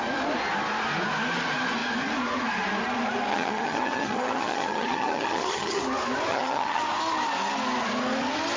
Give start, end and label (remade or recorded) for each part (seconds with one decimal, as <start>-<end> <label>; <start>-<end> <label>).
0.0-3.3 recorded; 3.3-5.8 remade; 5.8-6.3 recorded; 6.3-6.8 remade; 6.8-8.6 recorded